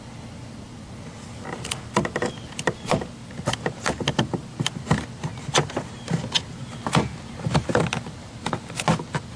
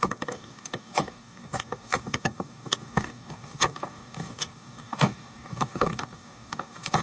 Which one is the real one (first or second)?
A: first